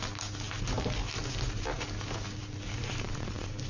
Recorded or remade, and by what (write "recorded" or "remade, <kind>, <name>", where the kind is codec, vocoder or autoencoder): recorded